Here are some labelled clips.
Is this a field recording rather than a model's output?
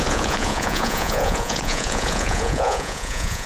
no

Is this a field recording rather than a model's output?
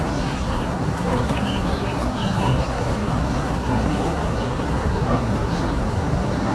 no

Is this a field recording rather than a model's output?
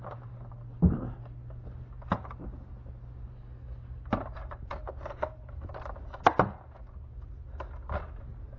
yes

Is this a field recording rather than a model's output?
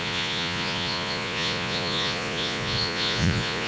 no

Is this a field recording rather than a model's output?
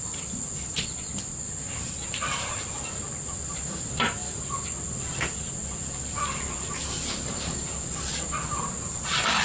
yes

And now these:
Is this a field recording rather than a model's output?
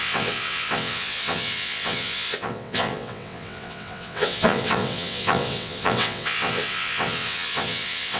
no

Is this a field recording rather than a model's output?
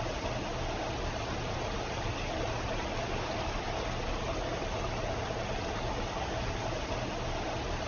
yes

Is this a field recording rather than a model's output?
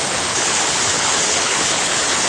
no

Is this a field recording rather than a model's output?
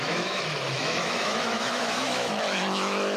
no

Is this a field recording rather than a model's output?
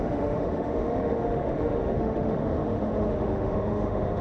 no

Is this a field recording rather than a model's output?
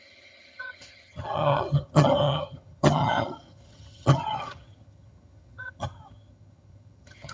no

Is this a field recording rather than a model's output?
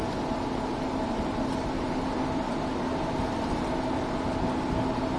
yes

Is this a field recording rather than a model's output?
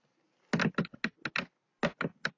yes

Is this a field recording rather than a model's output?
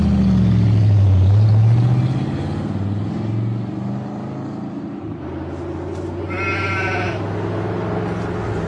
yes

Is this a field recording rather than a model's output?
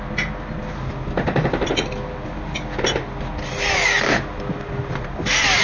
yes